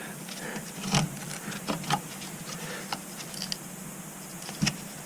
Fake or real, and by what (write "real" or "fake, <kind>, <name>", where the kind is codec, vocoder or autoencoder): real